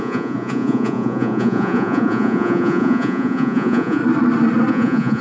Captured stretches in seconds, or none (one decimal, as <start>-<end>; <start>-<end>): 4.0-4.7